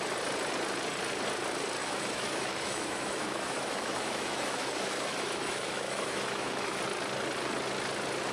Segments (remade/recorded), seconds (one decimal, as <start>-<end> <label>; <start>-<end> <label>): 0.0-1.8 recorded; 1.8-6.8 remade; 6.8-8.3 recorded